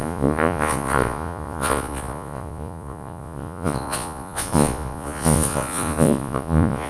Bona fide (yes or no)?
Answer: no